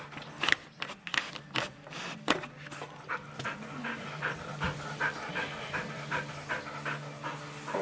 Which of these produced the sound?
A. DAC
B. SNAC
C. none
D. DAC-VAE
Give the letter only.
C